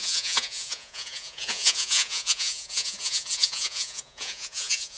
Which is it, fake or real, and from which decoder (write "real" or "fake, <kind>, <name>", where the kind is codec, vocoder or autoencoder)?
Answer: fake, vocoder, Vocos